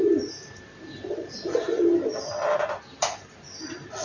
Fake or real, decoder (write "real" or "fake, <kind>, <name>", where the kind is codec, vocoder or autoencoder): real